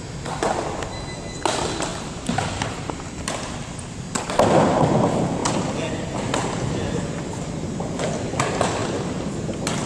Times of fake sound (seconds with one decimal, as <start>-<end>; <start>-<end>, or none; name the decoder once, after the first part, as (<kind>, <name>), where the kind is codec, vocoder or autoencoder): 1.9-3.5 (vocoder, BigVGAN v2); 8.8-9.3